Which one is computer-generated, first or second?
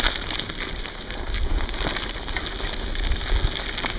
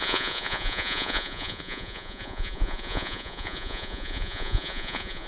second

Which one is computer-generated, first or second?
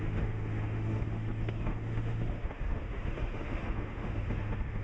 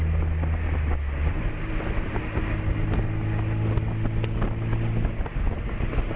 first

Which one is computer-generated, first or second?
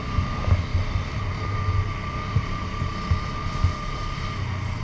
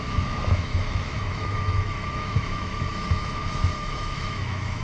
second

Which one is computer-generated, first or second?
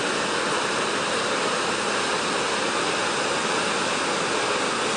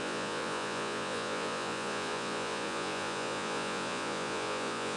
second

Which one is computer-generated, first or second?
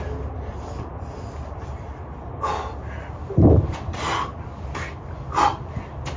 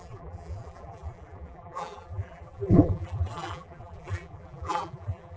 second